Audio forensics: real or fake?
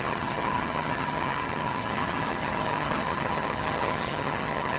fake